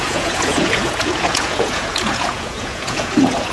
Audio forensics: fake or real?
fake